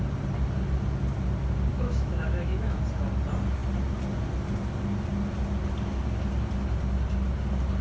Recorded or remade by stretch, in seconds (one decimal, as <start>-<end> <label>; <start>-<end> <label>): 0.0-1.7 recorded; 1.7-2.8 remade; 2.8-7.8 recorded